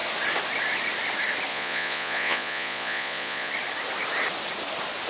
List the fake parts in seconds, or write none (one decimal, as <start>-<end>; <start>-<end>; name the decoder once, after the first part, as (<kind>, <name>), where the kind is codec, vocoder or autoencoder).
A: 1.5-3.5 (vocoder, Vocos)